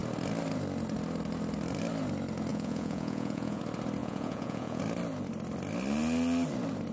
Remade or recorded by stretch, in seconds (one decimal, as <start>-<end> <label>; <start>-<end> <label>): 0.0-2.5 recorded; 2.5-3.6 remade; 3.6-4.0 recorded; 4.0-4.8 remade; 4.8-6.9 recorded